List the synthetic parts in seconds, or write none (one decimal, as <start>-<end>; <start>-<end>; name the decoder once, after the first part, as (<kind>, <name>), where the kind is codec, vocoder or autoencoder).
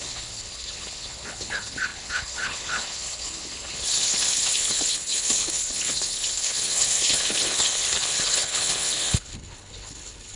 0.0-10.4 (codec, HILCodec)